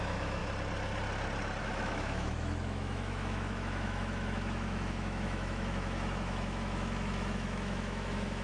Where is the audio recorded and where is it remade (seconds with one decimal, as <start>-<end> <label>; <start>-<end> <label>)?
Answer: 0.0-0.4 remade; 0.4-1.6 recorded; 1.6-8.4 remade